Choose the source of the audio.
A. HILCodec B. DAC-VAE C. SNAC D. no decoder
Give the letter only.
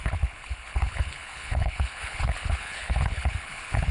A